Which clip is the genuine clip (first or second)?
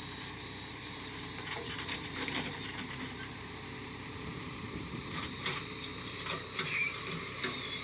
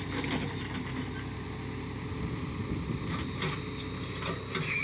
second